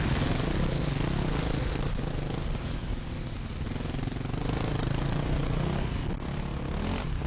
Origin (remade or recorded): recorded